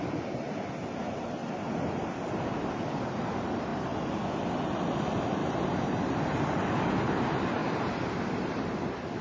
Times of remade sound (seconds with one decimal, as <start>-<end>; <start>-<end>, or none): 5.4-6.9; 7.6-9.2